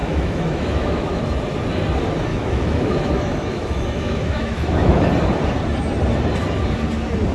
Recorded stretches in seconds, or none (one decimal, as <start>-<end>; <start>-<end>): 1.2-2.3; 5.1-7.3

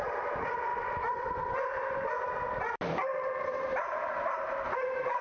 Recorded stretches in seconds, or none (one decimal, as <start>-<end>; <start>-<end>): 0.0-0.7; 1.3-3.1; 4.1-5.2

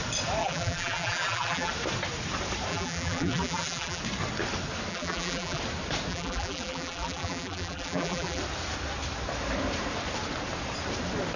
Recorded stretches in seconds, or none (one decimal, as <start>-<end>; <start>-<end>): 0.0-0.4; 1.7-2.7; 4.0-4.9; 5.6-6.1; 8.4-11.4